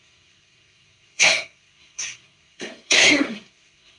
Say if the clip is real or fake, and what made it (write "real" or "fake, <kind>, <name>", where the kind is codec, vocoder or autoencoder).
fake, codec, SNAC